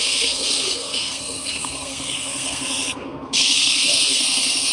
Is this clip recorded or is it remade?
remade